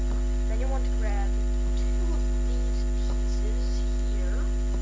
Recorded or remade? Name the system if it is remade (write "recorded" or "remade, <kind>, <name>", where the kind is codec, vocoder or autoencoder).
recorded